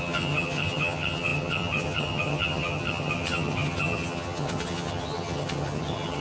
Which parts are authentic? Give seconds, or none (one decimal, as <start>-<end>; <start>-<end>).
none